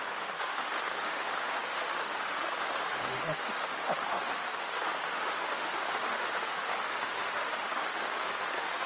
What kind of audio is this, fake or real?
fake